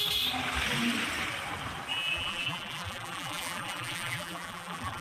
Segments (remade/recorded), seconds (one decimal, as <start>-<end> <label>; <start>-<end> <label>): 0.0-1.9 recorded; 1.9-5.0 remade